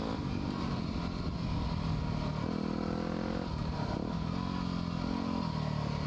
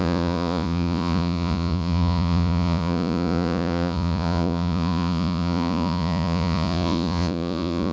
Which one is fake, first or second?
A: second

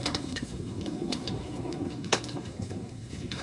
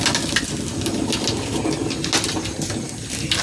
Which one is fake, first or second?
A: first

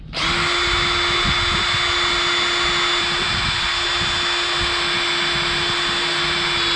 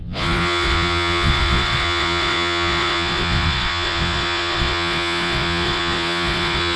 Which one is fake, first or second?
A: second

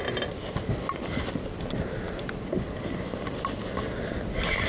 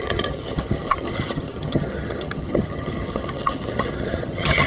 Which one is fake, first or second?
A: second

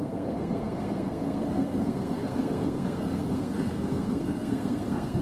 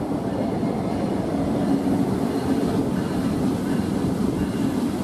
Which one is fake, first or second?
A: first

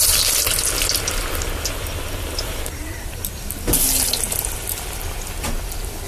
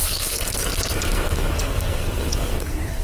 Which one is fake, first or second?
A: second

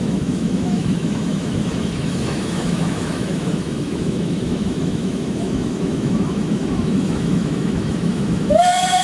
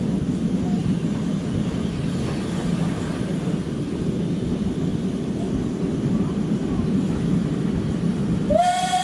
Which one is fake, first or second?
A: first